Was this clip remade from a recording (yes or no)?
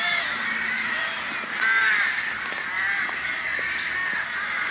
no